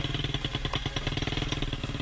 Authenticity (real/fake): real